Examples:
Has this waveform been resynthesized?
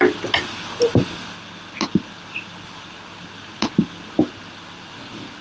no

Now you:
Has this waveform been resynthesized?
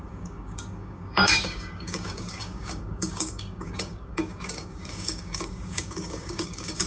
yes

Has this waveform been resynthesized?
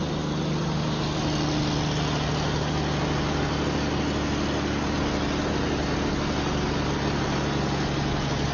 no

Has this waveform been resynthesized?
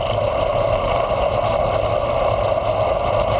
no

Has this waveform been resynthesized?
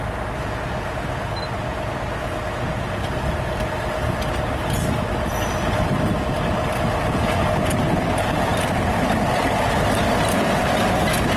no